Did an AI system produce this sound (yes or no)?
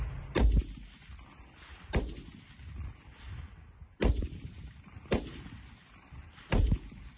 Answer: no